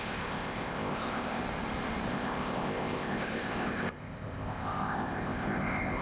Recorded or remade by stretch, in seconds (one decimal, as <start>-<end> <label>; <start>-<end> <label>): 0.0-1.4 remade; 1.4-2.1 recorded; 2.1-6.0 remade